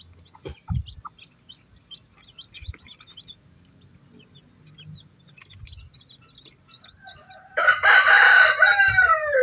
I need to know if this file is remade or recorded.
remade